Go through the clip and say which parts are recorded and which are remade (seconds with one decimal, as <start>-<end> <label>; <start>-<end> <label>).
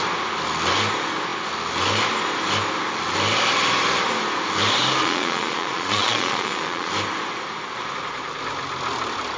0.0-5.0 recorded; 5.0-6.9 remade; 6.9-9.4 recorded